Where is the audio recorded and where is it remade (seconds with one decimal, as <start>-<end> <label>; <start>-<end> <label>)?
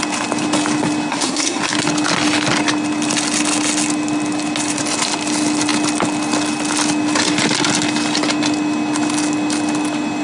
0.0-1.1 recorded; 1.1-1.6 remade; 1.6-10.2 recorded